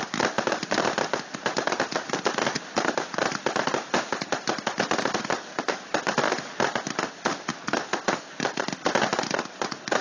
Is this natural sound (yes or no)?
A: yes